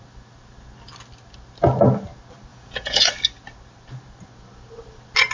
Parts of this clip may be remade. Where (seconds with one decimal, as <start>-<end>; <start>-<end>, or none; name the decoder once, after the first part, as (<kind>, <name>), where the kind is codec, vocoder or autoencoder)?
2.5-3.1 (vocoder, Vocos)